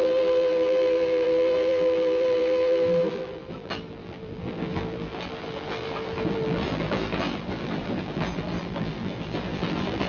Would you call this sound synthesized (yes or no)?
yes